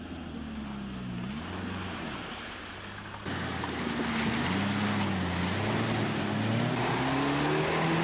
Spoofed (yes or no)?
no